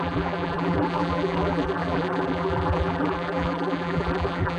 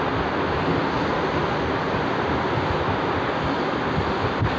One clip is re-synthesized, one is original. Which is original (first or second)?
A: second